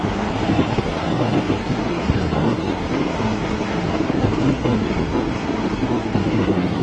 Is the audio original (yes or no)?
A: no